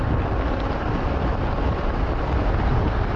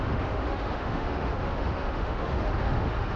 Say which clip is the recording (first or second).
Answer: first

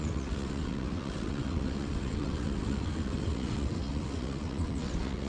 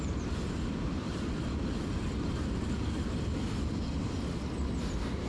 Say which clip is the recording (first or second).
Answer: second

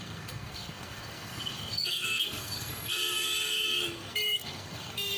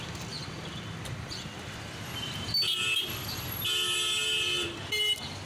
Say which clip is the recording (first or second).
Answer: second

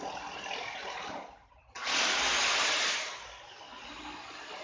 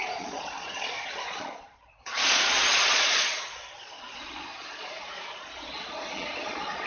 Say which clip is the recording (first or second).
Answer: first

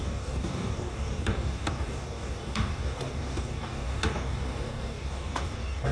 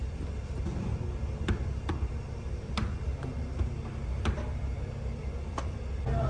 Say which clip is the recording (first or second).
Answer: second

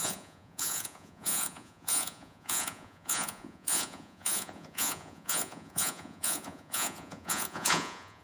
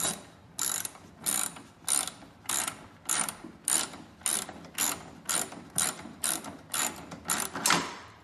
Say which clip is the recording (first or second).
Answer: second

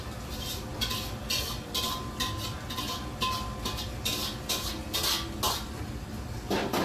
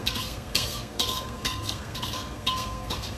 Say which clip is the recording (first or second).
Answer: first